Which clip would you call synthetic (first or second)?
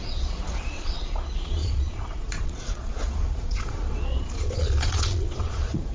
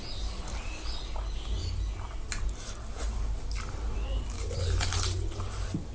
first